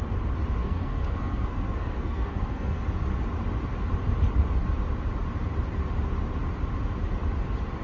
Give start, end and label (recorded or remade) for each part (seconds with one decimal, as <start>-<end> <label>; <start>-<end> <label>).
0.0-0.6 recorded; 0.6-2.8 remade; 2.8-7.8 recorded